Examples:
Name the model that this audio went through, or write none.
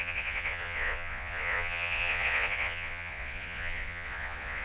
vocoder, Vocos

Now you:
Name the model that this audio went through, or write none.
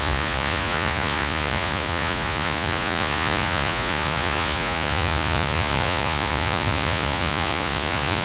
vocoder, Vocos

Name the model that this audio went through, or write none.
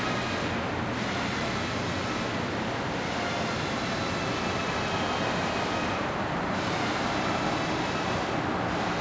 none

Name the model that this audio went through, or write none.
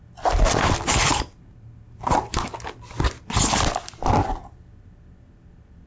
none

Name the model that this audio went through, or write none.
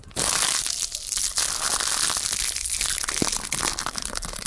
none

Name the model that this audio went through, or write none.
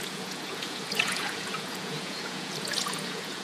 vocoder, Vocos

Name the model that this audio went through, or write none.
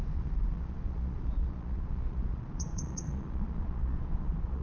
vocoder, Vocos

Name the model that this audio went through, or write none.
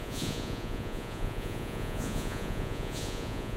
vocoder, Vocos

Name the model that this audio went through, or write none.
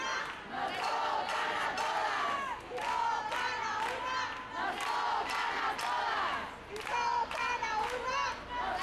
none